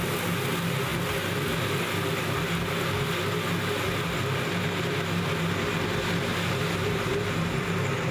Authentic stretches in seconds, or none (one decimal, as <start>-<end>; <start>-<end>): 0.0-6.3